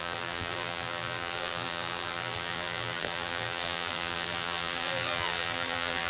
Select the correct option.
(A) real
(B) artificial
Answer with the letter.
B